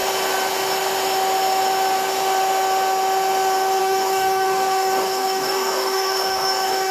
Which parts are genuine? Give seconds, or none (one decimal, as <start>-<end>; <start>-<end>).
0.0-3.8

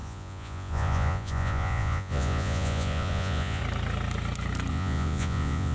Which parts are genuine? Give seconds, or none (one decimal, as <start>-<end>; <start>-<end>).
3.6-4.7

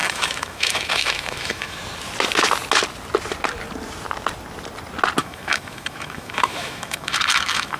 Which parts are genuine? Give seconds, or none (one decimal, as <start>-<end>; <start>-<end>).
1.8-5.2

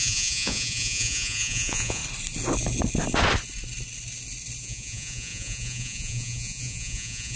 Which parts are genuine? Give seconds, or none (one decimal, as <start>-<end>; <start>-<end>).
2.0-4.6

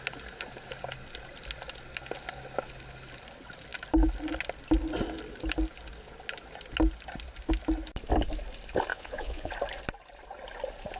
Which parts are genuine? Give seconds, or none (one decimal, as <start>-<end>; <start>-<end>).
0.0-8.9; 9.5-11.0

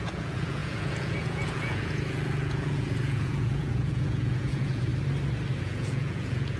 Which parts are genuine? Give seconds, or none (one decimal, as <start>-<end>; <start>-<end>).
4.9-5.6

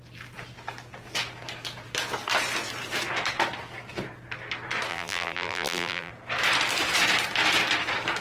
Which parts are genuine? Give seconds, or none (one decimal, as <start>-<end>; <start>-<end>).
0.0-4.9; 6.1-8.2